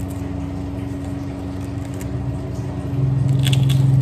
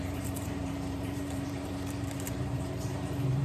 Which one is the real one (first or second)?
first